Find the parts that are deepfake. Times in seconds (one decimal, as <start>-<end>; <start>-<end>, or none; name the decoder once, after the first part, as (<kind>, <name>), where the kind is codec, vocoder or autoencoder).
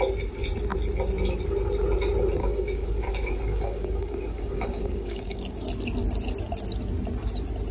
2.4-5.7 (codec, DAC)